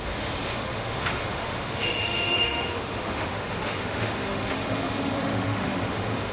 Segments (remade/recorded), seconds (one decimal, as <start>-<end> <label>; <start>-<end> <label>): 0.0-6.3 remade